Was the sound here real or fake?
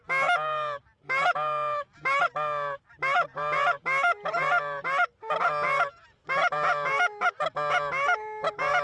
real